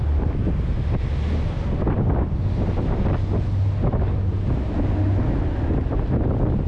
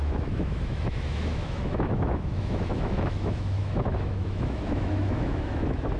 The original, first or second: first